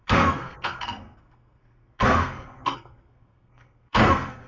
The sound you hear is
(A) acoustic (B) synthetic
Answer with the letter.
B